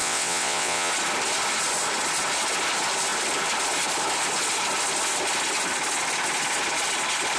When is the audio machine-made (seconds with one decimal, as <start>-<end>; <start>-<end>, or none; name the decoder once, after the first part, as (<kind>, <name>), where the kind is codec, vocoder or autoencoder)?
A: 0.0-0.9 (vocoder, WaveNeXt)